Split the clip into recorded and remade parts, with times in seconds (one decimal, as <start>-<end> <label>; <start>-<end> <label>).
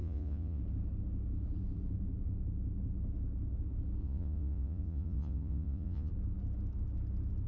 0.0-0.6 remade; 0.6-4.0 recorded; 4.0-6.1 remade; 6.1-7.5 recorded